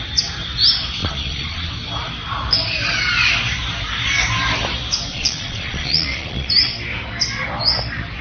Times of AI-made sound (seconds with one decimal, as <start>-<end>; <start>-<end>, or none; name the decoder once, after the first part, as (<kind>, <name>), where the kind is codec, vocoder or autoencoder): 1.0-1.7 (vocoder, Vocos); 5.1-6.5

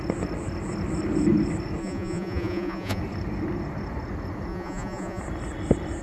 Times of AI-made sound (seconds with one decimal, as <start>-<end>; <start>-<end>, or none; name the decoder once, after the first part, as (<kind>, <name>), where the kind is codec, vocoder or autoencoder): 1.8-3.0 (vocoder, Vocos); 4.5-5.2

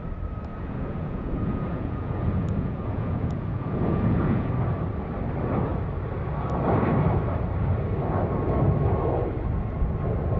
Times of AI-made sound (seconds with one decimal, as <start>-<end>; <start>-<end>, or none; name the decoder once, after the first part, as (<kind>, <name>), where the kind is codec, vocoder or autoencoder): 0.5-4.5 (vocoder, Vocos)

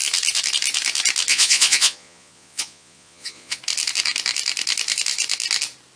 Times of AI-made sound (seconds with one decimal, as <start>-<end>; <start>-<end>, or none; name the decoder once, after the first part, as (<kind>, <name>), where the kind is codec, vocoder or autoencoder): 1.3-3.6 (vocoder, Vocos)

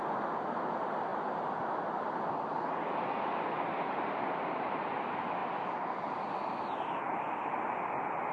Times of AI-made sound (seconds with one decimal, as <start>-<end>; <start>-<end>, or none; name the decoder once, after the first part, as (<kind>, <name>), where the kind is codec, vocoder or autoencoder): none

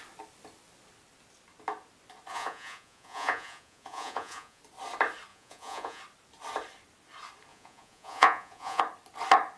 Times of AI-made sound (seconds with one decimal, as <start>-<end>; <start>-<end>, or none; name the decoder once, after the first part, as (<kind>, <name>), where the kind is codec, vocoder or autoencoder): 2.3-4.6 (vocoder, Vocos); 5.3-6.0; 7.5-8.8

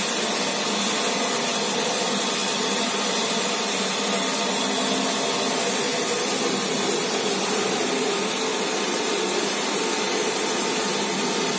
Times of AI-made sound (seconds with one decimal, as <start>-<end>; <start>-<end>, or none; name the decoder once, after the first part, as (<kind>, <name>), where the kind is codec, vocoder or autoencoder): none